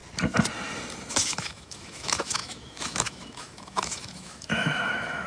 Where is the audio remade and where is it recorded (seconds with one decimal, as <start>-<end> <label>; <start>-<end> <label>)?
0.0-1.1 recorded; 1.1-5.3 remade